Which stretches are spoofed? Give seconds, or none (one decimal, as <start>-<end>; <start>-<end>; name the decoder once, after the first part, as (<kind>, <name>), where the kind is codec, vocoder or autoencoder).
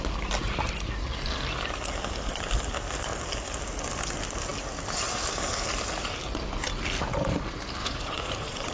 7.8-8.7 (vocoder, Vocos)